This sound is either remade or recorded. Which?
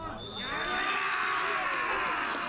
recorded